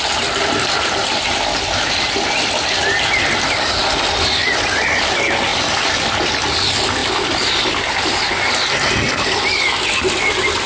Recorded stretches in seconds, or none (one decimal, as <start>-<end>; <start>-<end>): 0.0-4.4; 5.0-5.5; 6.1-10.7